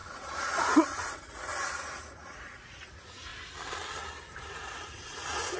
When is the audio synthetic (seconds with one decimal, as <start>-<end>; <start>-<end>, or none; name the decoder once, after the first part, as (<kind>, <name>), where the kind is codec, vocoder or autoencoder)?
0.0-3.3 (vocoder, Vocos); 4.4-5.6